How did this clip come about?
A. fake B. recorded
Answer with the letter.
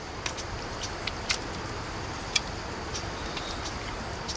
B